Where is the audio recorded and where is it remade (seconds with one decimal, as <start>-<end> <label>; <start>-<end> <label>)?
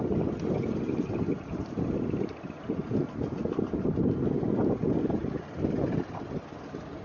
0.0-7.0 recorded